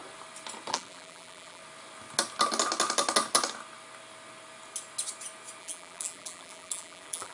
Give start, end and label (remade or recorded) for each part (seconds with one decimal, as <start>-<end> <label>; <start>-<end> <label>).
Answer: 0.0-0.7 recorded; 0.7-1.6 remade; 1.6-5.6 recorded; 5.6-7.3 remade